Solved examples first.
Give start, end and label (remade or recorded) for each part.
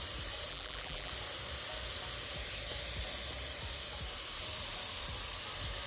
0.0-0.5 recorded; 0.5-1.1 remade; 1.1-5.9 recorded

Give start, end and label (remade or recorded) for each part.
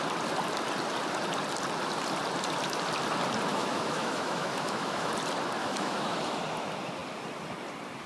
0.0-3.5 recorded; 3.5-5.1 remade; 5.1-5.6 recorded; 5.6-6.4 remade; 6.4-8.1 recorded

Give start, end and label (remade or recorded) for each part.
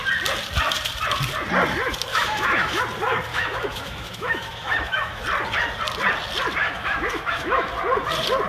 0.0-2.1 recorded; 2.1-2.8 remade; 2.8-3.3 recorded; 3.3-5.2 remade; 5.2-6.6 recorded; 6.6-7.7 remade; 7.7-8.5 recorded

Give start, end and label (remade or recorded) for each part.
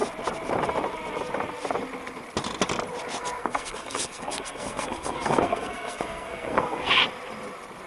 0.0-3.2 recorded; 3.2-7.0 remade; 7.0-7.9 recorded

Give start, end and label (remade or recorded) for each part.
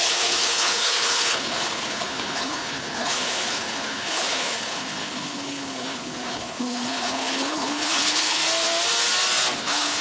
0.0-8.4 remade; 8.4-9.6 recorded; 9.6-10.0 remade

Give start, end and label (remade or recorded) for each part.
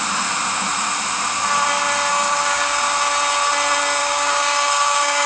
0.0-2.1 recorded; 2.1-2.8 remade; 2.8-4.0 recorded; 4.0-5.3 remade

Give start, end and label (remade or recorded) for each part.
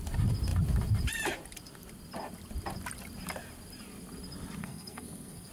0.0-4.6 recorded; 4.6-5.5 remade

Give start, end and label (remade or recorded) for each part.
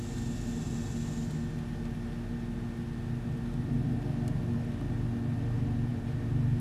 0.0-6.6 recorded